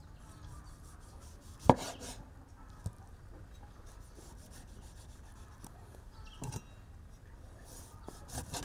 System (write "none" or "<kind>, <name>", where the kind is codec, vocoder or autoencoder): none